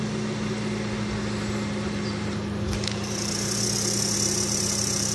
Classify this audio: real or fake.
fake